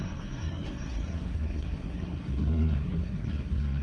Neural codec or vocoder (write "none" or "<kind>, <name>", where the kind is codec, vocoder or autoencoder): codec, SNAC